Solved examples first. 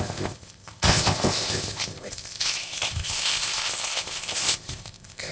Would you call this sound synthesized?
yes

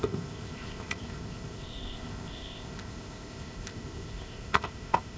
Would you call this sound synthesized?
yes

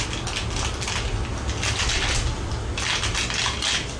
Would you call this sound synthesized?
no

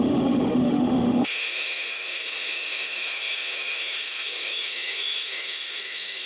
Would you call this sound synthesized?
yes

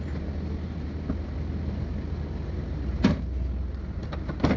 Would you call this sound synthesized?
no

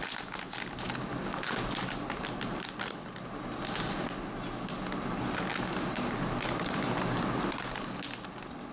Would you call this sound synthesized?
no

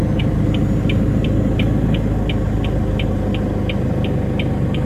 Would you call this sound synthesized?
no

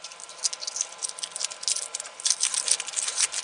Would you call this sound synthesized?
no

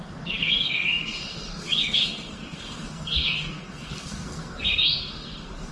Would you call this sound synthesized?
yes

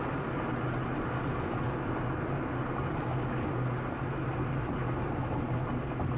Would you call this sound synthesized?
no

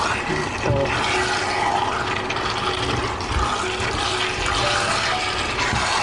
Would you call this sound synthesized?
no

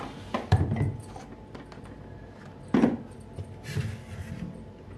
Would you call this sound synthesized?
no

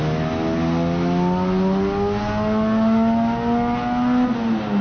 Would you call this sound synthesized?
no